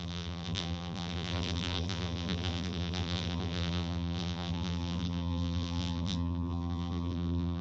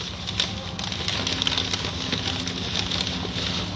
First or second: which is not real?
first